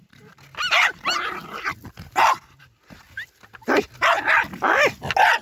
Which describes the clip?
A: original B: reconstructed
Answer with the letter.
A